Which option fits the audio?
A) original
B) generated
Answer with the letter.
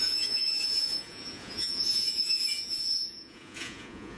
B